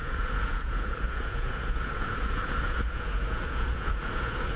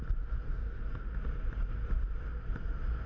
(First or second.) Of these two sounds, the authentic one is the second